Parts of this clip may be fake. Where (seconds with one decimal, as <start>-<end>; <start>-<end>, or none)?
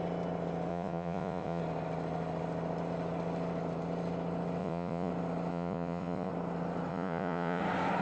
0.7-1.6; 4.6-5.1; 5.5-6.3; 6.9-7.6